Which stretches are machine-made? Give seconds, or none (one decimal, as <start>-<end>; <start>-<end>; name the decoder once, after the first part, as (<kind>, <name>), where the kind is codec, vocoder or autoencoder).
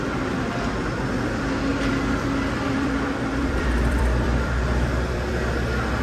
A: 1.7-5.3 (vocoder, BigVGAN v2)